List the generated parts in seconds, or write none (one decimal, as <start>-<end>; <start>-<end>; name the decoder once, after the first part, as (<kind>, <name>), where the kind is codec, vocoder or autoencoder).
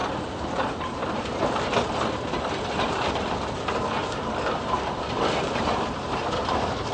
0.0-1.9 (vocoder, BigVGAN v2); 4.0-6.3